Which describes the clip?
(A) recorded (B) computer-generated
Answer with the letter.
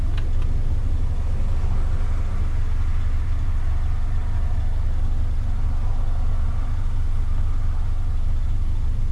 A